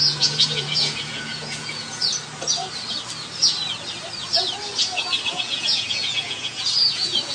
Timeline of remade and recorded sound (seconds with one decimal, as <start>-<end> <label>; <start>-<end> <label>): 0.0-2.0 remade; 2.0-5.3 recorded; 5.3-7.3 remade